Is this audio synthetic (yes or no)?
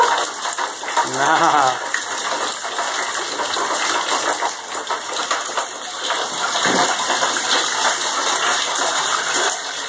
no